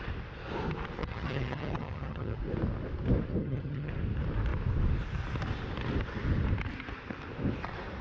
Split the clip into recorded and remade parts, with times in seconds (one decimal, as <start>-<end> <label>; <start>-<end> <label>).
0.0-1.0 recorded; 1.0-2.4 remade; 2.4-3.4 recorded; 3.4-3.9 remade; 3.9-8.0 recorded